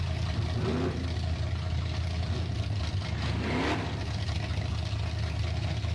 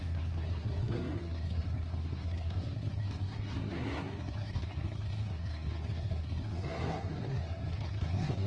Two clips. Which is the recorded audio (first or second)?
first